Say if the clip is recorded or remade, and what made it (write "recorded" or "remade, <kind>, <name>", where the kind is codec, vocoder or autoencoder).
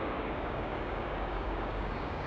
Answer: remade, codec, DAC